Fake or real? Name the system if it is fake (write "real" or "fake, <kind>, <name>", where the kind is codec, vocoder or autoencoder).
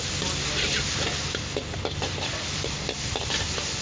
real